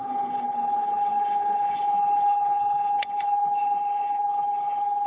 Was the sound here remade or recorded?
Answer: remade